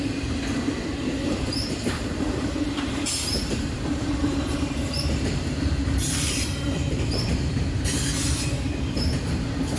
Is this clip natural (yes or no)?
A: no